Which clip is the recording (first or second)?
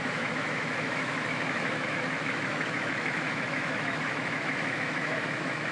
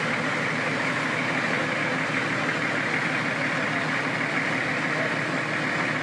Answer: second